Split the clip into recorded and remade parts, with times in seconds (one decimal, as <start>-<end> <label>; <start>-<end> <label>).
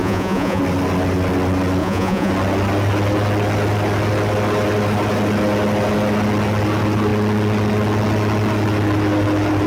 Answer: 0.0-0.6 remade; 0.6-1.8 recorded; 1.8-2.3 remade; 2.3-9.7 recorded